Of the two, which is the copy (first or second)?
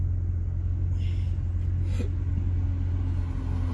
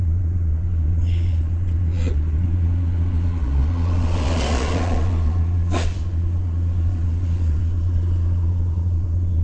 second